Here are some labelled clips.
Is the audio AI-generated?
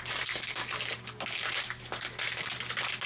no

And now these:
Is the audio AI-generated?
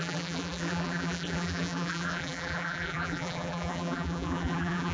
yes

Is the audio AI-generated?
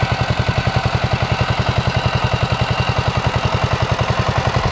no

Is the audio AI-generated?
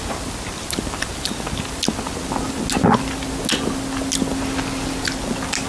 no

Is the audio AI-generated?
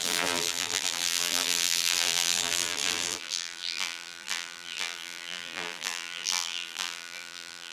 yes